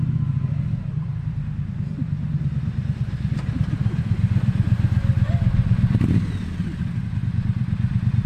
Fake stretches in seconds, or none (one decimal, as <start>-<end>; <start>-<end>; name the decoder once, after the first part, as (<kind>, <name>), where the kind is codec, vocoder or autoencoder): 0.0-8.3 (vocoder, BigVGAN v2)